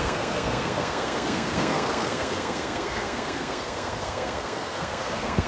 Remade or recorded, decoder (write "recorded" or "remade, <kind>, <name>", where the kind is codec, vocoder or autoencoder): remade, codec, SNAC